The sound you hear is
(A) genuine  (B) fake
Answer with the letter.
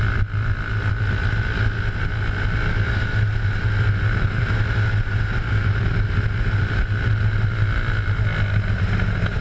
A